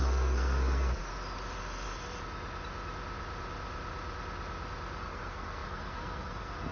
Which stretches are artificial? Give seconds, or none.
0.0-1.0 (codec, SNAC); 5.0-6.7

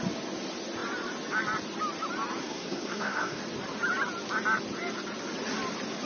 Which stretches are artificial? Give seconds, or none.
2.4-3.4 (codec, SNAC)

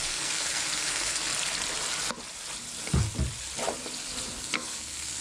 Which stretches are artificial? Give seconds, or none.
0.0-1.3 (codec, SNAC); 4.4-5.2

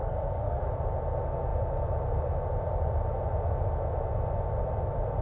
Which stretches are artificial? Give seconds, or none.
0.0-0.6 (codec, SNAC)

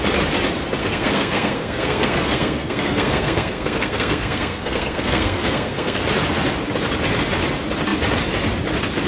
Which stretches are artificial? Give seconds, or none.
0.8-6.0 (codec, SNAC)